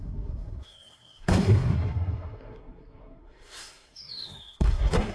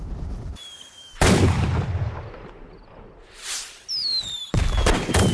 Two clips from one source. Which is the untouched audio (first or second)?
second